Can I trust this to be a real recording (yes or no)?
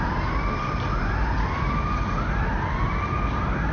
yes